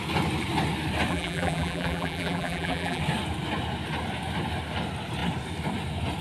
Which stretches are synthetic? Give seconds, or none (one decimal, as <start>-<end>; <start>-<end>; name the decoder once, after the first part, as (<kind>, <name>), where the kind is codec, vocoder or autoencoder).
1.1-3.0 (vocoder, BigVGAN v2)

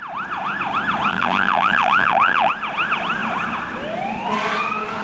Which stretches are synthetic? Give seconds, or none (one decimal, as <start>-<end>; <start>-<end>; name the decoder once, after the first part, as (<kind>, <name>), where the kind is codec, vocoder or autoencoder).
1.1-2.5 (vocoder, BigVGAN v2)